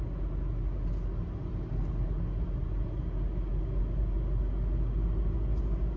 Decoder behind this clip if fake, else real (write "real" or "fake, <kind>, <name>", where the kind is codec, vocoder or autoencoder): real